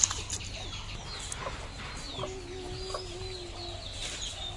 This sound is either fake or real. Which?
real